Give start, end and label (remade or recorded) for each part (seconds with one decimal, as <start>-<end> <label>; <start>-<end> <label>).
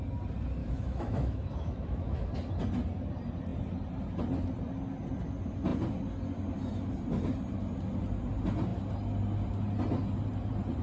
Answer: 0.0-0.6 recorded; 0.6-2.3 remade; 2.3-10.8 recorded